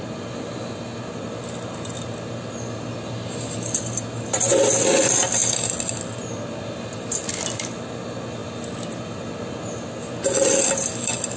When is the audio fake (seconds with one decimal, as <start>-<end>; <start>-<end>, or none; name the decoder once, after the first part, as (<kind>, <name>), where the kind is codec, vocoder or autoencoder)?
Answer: none